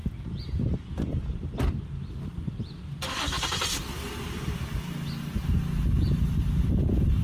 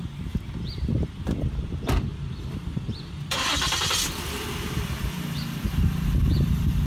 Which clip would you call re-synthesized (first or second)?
second